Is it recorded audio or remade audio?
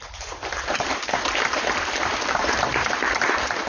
remade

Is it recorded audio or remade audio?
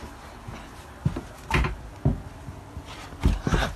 recorded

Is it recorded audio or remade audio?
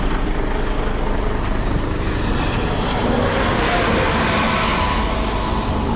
recorded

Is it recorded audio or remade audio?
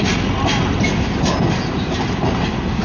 recorded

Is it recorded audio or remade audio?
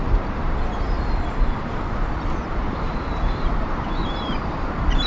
remade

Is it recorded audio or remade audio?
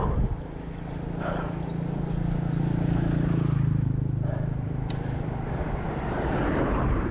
recorded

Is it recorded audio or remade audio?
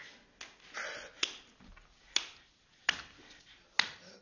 recorded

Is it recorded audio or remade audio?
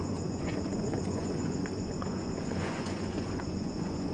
remade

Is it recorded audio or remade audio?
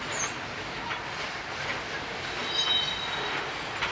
recorded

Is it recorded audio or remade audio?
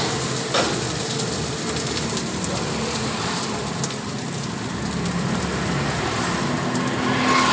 recorded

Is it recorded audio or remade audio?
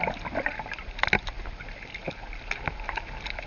recorded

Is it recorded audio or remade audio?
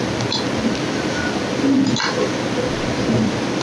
recorded